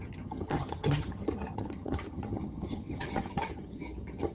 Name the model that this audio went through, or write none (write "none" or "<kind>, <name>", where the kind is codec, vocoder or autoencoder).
vocoder, HiFi-GAN